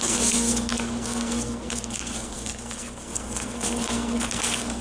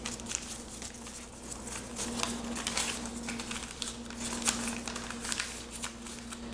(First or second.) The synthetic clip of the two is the first